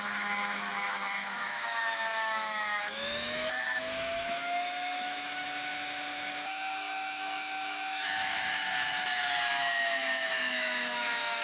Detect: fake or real fake